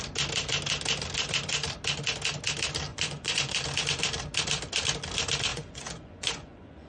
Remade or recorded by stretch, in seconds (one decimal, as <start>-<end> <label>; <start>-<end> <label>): 0.0-2.9 recorded; 2.9-3.5 remade; 3.5-5.5 recorded; 5.5-6.9 remade